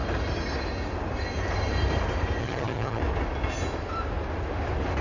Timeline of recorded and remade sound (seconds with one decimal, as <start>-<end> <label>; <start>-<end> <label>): 0.0-2.4 recorded; 2.4-3.0 remade; 3.0-5.0 recorded